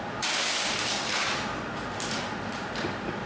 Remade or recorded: recorded